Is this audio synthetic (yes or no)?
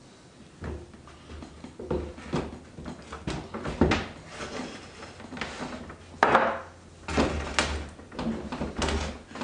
no